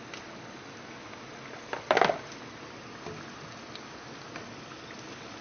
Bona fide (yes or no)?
yes